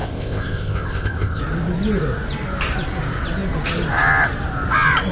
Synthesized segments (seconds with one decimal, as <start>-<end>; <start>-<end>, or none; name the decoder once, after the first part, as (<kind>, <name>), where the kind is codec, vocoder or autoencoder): 0.0-1.4 (codec, ZipCodec)